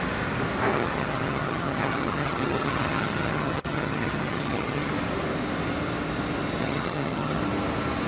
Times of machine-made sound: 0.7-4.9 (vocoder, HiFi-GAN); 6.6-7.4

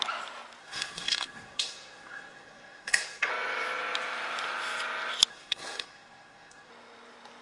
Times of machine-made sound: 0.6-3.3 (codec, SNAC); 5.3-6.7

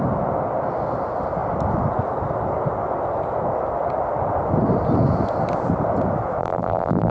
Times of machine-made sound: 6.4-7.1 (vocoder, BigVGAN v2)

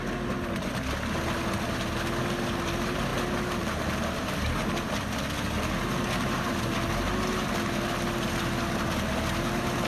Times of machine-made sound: none

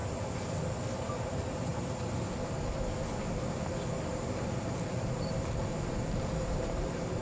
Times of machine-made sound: 1.2-1.7 (vocoder, BigVGAN v2); 4.1-7.2

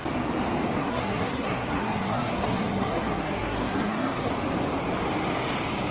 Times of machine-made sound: 0.8-4.3 (codec, SNAC)

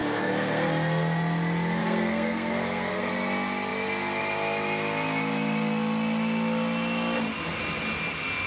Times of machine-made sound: 0.0-0.7 (codec, SNAC); 1.8-3.1